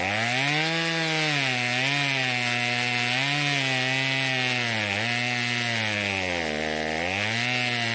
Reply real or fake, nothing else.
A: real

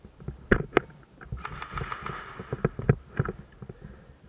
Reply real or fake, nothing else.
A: real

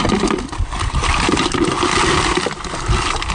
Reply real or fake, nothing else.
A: real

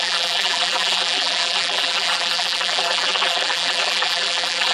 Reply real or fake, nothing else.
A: fake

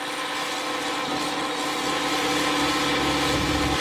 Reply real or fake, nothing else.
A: real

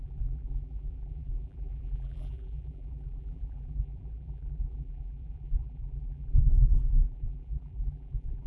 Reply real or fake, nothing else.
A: fake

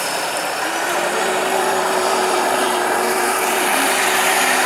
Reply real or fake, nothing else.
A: fake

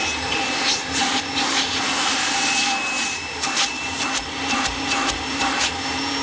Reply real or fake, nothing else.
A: fake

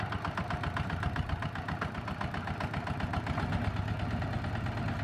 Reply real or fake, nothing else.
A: real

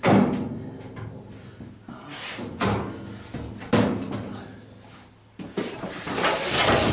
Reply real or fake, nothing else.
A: real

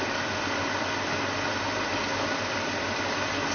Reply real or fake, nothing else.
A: real